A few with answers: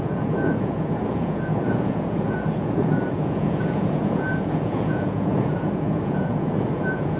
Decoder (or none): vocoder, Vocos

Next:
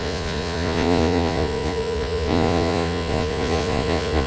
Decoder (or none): vocoder, Vocos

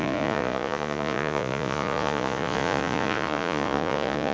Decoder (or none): vocoder, Vocos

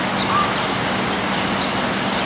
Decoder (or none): none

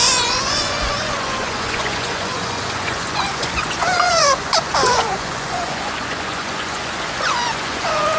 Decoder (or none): vocoder, Vocos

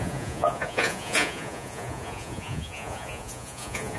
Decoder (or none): vocoder, Vocos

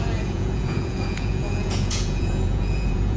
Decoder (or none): vocoder, Vocos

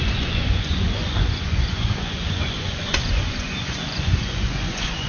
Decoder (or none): vocoder, Vocos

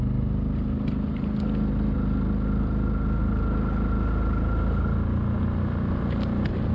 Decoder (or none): none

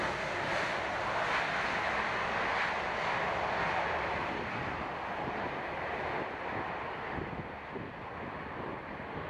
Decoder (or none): none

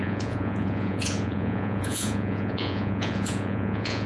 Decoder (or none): vocoder, Vocos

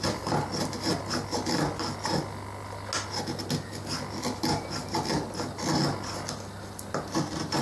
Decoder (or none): none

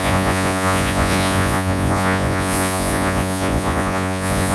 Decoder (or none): vocoder, Vocos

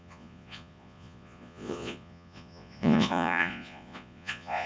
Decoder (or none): vocoder, Vocos